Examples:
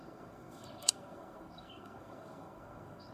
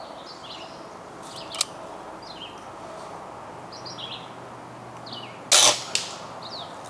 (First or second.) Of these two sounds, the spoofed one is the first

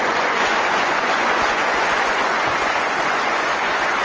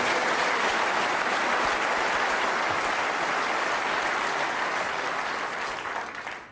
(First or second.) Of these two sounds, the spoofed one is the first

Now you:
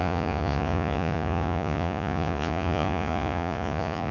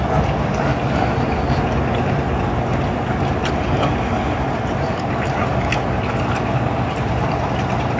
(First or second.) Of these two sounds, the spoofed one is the first